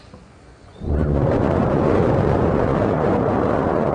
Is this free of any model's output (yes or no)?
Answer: no